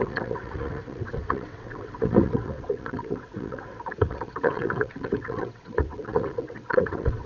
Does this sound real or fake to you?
fake